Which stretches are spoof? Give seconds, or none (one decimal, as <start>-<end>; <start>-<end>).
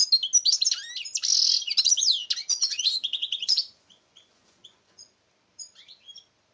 2.4-5.1